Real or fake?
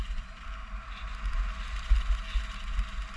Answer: real